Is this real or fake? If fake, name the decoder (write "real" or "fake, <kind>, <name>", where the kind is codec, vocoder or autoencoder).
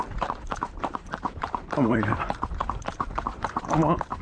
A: fake, vocoder, BigVGAN v2